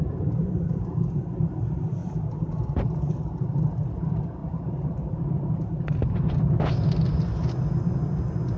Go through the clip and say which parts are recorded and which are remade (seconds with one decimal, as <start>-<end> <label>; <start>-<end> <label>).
0.0-4.4 recorded; 4.4-5.5 remade; 5.5-8.6 recorded